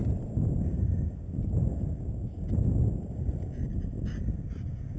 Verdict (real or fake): real